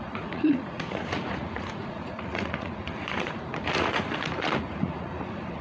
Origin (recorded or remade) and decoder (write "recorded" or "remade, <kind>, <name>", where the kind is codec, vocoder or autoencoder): remade, vocoder, Vocos